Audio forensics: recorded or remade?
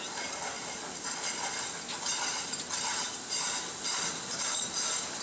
remade